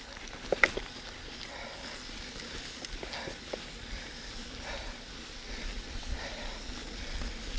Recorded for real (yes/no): yes